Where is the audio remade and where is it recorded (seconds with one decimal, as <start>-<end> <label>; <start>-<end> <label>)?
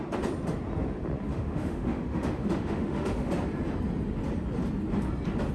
0.0-1.3 recorded; 1.3-3.3 remade; 3.3-5.5 recorded